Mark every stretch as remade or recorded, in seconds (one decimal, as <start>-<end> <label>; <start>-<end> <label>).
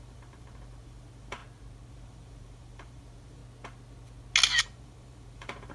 0.0-1.4 remade; 1.4-1.9 recorded; 1.9-3.4 remade; 3.4-4.6 recorded; 4.6-5.7 remade